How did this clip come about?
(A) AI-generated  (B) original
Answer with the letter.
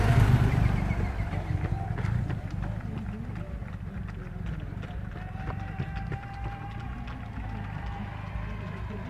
B